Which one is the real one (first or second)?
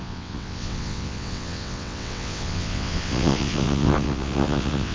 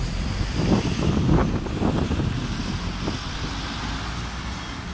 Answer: second